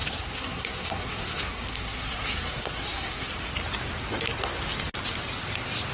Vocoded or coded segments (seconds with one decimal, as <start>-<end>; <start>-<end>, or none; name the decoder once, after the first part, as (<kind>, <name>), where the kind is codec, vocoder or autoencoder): 0.0-3.3 (codec, SNAC)